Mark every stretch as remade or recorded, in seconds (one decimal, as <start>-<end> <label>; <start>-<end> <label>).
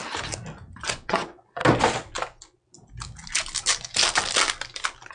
0.0-0.9 recorded; 0.9-1.6 remade; 1.6-5.1 recorded